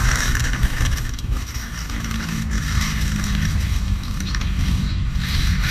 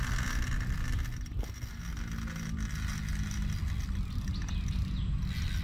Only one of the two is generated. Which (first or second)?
first